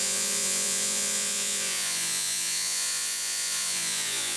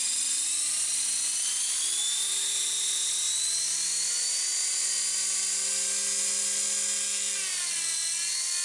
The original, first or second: second